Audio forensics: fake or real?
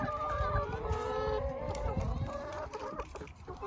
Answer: fake